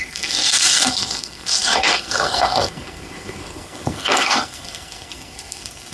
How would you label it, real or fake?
fake